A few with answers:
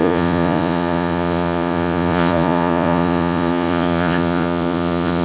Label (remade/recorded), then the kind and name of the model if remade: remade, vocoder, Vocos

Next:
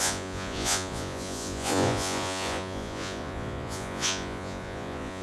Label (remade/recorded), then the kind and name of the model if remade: remade, vocoder, Vocos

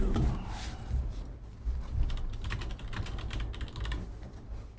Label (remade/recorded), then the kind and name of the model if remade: recorded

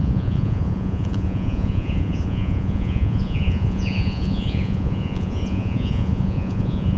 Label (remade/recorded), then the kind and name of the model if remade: remade, vocoder, Vocos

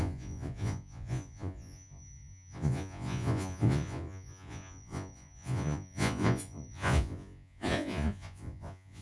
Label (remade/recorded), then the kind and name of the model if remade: remade, vocoder, Vocos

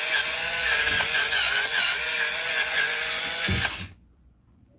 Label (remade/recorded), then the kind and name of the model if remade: remade, vocoder, Vocos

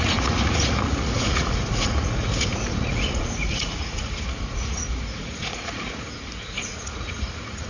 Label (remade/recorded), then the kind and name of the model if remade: remade, vocoder, Vocos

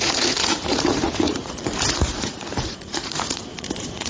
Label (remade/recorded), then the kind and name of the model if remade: remade, vocoder, Vocos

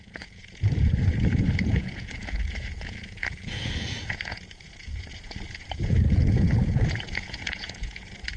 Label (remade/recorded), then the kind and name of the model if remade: remade, vocoder, Vocos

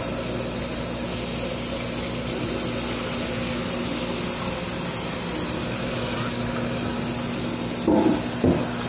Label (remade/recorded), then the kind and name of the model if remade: recorded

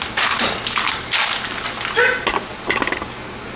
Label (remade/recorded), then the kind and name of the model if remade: recorded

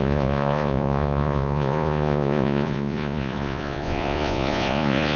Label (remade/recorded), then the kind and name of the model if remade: remade, vocoder, Vocos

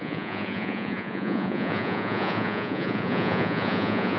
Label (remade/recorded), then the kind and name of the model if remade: remade, vocoder, Vocos